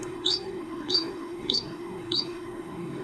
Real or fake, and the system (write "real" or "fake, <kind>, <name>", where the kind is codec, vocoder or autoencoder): fake, codec, SNAC